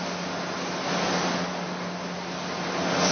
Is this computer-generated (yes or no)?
no